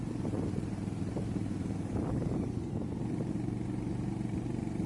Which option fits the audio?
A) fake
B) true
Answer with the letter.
A